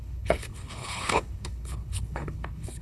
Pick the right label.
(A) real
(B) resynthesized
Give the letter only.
B